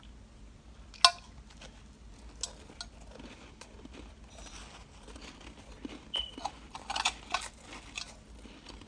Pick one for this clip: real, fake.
real